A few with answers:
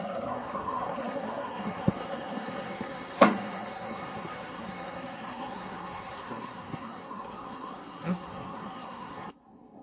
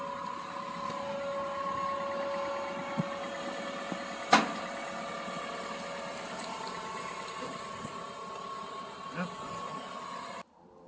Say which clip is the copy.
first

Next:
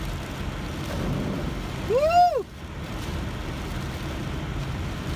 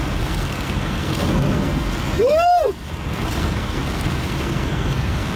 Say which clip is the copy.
second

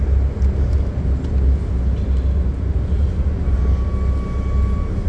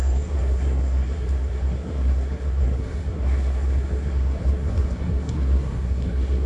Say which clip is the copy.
second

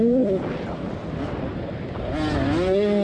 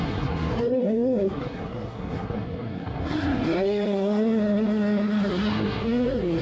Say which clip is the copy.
second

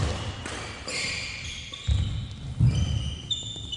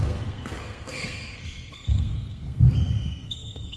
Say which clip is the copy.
second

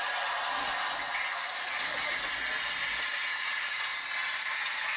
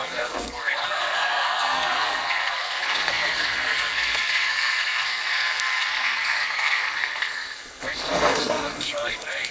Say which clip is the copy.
second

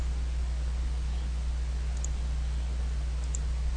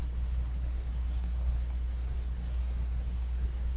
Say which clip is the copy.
second